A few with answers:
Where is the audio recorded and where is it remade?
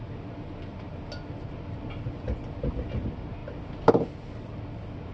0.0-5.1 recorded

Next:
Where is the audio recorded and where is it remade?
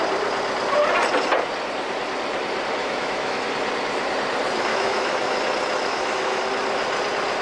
0.0-2.8 recorded; 2.8-3.5 remade; 3.5-4.7 recorded; 4.7-5.4 remade; 5.4-5.9 recorded; 5.9-6.4 remade; 6.4-7.4 recorded